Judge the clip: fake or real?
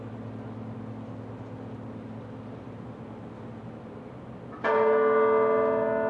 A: real